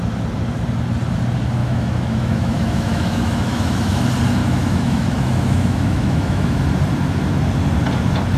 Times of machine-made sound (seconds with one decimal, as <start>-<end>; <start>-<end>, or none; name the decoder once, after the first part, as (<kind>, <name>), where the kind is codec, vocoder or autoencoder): 1.6-4.0 (autoencoder, DAC-VAE); 4.4-6.6